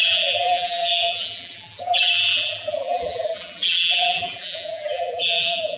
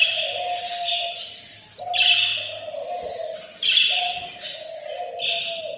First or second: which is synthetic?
first